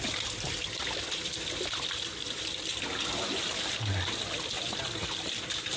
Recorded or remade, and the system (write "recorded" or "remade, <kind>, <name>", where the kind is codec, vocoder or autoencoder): recorded